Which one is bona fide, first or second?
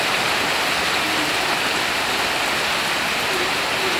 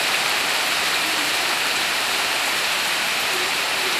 first